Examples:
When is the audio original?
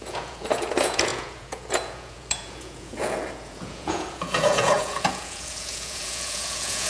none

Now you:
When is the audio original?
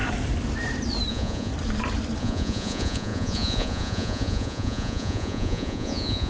0.0-1.1; 1.5-2.2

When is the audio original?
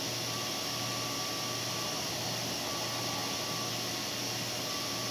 0.0-5.1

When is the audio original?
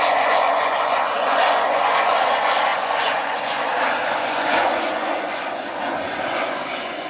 none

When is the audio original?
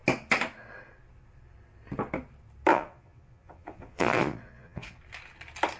0.0-2.7; 5.0-5.8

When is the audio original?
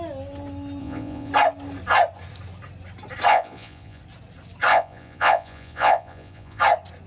0.0-0.8; 1.3-3.3; 4.0-4.7; 6.6-7.1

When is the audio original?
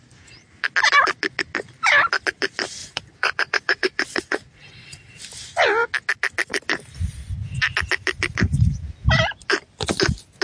0.0-2.8; 5.2-10.4